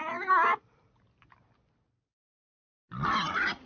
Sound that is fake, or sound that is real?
real